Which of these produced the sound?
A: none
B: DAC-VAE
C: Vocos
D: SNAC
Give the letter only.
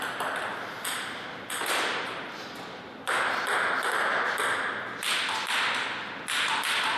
A